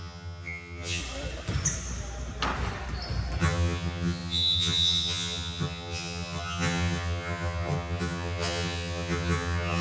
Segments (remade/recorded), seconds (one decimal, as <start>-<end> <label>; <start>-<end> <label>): 0.0-1.0 remade; 1.0-3.4 recorded; 3.4-9.8 remade